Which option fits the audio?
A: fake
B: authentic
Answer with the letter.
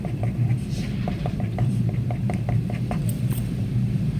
A